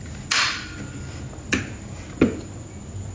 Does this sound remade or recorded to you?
recorded